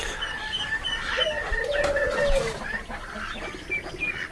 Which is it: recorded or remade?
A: recorded